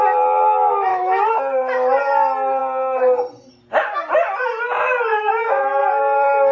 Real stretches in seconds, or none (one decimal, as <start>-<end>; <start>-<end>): 0.0-0.9; 1.4-5.1; 5.8-6.5